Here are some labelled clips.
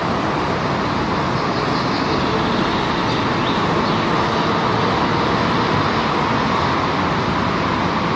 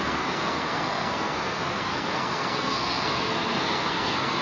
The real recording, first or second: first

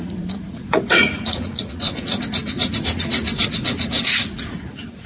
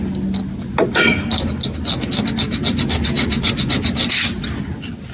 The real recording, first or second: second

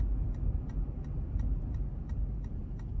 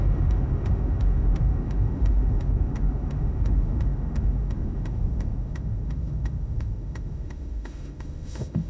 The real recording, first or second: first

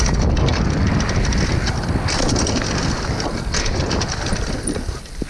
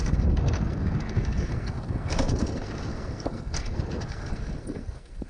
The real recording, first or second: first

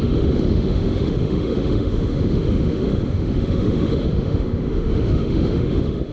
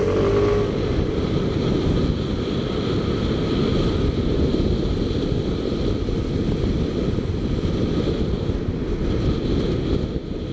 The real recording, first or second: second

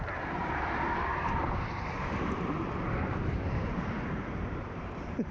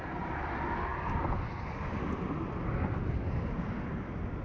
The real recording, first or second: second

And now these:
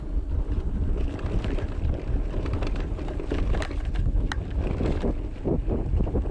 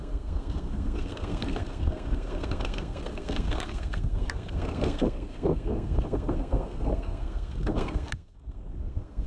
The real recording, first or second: first